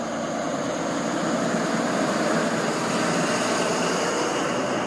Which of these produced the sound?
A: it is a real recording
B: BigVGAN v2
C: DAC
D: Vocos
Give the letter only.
B